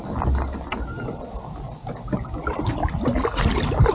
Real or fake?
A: real